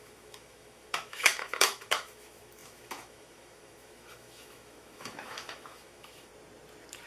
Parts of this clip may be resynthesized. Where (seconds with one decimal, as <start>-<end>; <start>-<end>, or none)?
0.0-6.3